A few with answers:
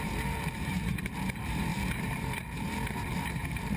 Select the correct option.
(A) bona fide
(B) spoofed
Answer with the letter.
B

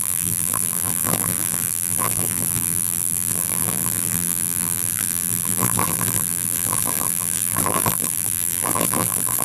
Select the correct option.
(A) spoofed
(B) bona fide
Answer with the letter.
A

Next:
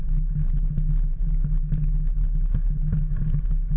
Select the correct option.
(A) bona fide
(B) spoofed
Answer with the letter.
A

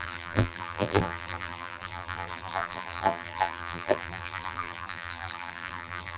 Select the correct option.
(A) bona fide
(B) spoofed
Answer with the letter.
B